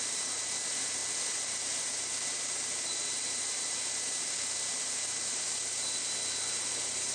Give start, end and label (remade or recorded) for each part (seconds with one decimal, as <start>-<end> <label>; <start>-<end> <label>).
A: 0.0-1.0 remade; 1.0-1.5 recorded; 1.5-6.0 remade; 6.0-6.6 recorded; 6.6-7.1 remade